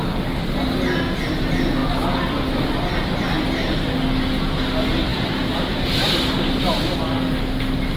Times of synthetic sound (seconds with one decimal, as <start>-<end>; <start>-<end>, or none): none